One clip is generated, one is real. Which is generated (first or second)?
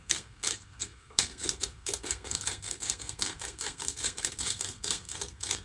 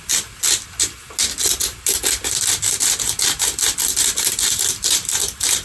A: first